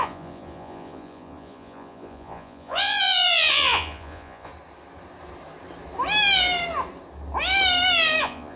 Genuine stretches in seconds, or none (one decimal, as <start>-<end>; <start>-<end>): 4.5-8.2